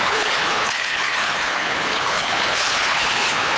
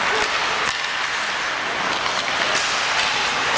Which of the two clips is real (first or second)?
second